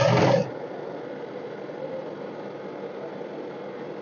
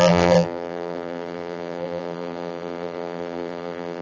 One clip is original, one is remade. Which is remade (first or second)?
second